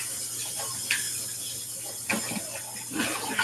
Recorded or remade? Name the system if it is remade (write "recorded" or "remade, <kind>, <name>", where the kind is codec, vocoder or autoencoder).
recorded